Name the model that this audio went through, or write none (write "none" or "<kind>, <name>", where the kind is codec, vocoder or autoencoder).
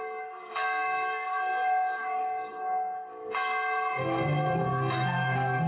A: codec, SNAC